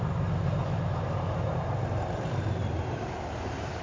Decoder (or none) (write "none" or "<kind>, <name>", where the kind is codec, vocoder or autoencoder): vocoder, BigVGAN v2